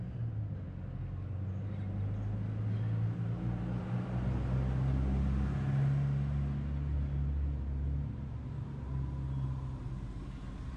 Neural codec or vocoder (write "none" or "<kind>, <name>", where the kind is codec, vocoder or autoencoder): none